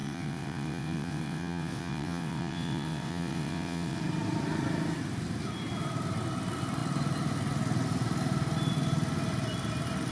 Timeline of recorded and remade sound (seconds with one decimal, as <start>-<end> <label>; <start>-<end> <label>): 0.0-4.0 remade; 4.0-10.1 recorded